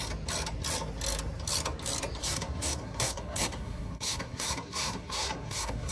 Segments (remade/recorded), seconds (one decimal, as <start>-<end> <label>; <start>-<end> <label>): 0.0-2.2 recorded; 2.2-5.9 remade